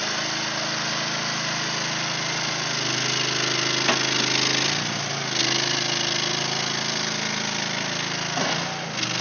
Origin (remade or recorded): recorded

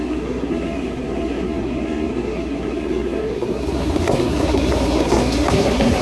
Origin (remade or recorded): remade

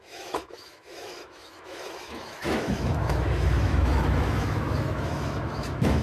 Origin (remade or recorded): remade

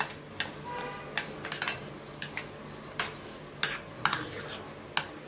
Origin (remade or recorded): recorded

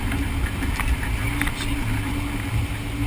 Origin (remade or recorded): recorded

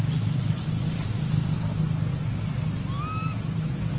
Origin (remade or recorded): recorded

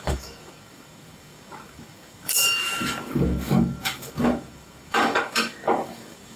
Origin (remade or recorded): remade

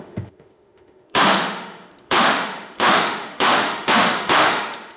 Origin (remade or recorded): remade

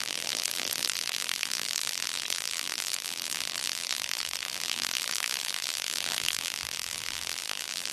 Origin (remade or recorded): remade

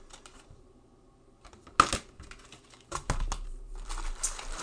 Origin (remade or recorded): recorded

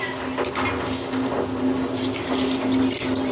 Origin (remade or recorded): recorded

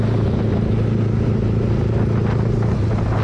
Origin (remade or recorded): recorded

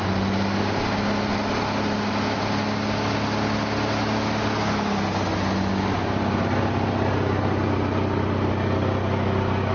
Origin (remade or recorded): recorded